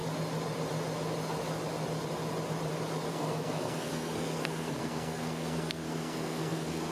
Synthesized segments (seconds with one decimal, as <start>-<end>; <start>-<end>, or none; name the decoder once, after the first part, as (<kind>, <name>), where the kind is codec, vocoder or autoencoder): 3.1-6.9 (codec, SNAC)